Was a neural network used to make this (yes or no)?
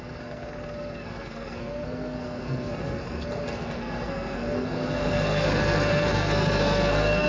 yes